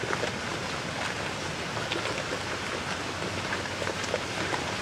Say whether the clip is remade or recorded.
recorded